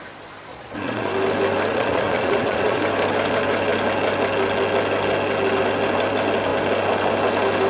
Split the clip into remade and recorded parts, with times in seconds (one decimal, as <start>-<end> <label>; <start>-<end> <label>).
0.0-0.5 recorded; 0.5-1.1 remade; 1.1-1.7 recorded; 1.7-2.8 remade; 2.8-7.7 recorded